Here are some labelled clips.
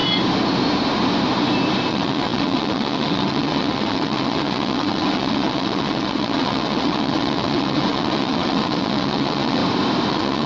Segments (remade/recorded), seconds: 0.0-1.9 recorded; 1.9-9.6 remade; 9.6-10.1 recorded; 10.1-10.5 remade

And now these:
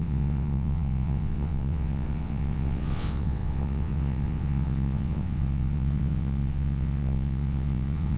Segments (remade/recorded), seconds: 0.0-8.2 remade

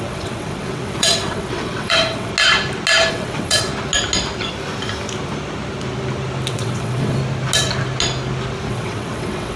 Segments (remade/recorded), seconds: 0.0-2.3 remade; 2.3-3.1 recorded; 3.1-3.7 remade; 3.7-6.5 recorded; 6.5-7.2 remade; 7.2-8.7 recorded; 8.7-9.6 remade

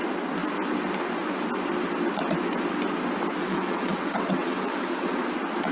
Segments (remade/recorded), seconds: 0.0-3.4 recorded; 3.4-5.2 remade; 5.2-5.7 recorded

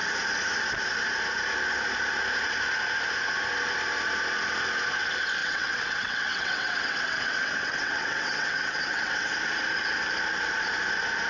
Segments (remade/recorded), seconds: 0.0-5.4 recorded; 5.4-9.3 remade; 9.3-11.3 recorded

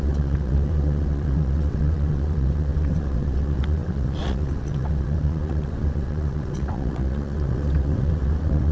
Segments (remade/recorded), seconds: 0.0-8.7 remade

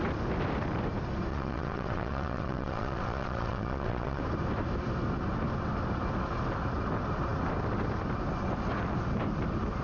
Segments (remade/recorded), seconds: 0.0-1.3 recorded; 1.3-4.2 remade; 4.2-9.8 recorded

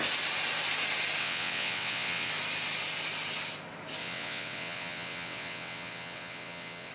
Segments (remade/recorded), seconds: 0.0-1.2 recorded; 1.2-2.3 remade; 2.3-4.0 recorded; 4.0-6.9 remade